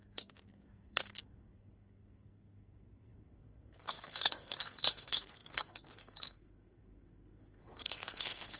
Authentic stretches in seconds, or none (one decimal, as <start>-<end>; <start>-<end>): none